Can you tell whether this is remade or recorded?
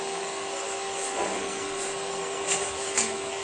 remade